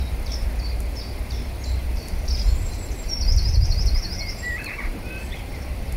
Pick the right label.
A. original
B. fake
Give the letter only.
B